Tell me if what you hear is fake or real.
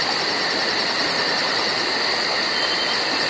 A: real